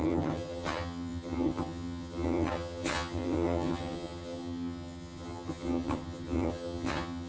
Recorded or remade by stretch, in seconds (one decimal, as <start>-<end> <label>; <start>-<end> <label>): 0.0-7.3 remade